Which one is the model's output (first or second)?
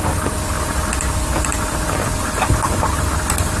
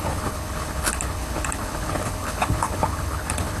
second